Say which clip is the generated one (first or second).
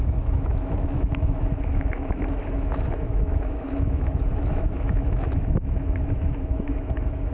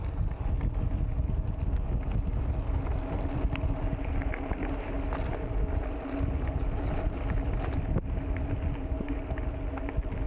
first